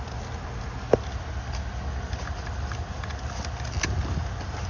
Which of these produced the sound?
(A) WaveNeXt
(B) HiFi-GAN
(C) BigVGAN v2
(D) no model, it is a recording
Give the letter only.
D